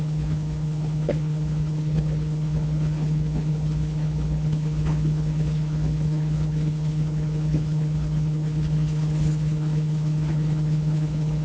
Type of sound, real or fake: fake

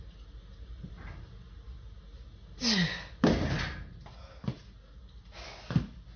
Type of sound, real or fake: real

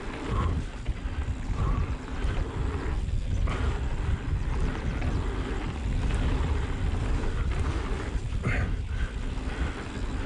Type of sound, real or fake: real